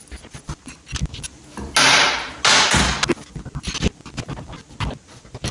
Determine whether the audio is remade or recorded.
recorded